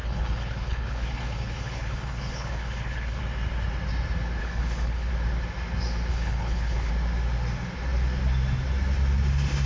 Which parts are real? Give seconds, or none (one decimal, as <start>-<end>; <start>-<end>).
3.2-4.4; 5.1-6.1; 6.9-9.7